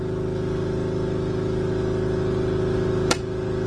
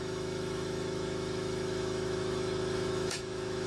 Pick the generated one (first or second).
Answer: second